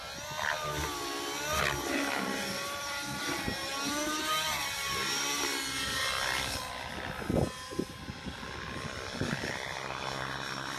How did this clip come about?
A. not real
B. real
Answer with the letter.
B